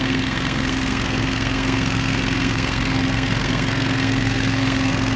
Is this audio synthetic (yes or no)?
yes